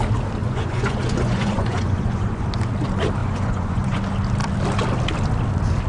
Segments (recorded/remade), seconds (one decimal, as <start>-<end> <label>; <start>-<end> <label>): 0.0-0.4 recorded; 0.4-2.4 remade; 2.4-3.2 recorded; 3.2-4.0 remade; 4.0-5.9 recorded

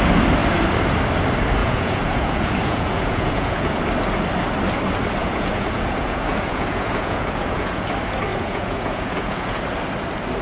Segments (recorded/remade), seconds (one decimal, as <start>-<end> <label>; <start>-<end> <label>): 0.0-1.6 recorded; 1.6-3.8 remade; 3.8-5.2 recorded; 5.2-7.9 remade; 7.9-8.3 recorded; 8.3-9.6 remade; 9.6-10.4 recorded

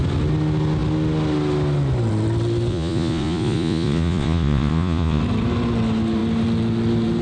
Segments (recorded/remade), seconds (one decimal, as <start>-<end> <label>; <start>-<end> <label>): 0.0-2.7 recorded; 2.7-5.2 remade; 5.2-7.2 recorded